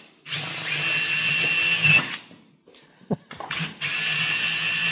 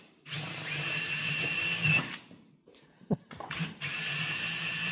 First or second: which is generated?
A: second